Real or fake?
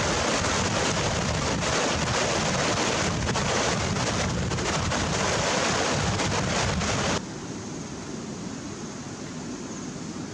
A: real